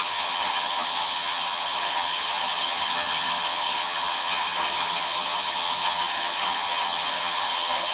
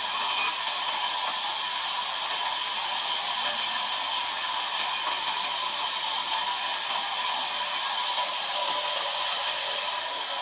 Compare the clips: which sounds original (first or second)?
second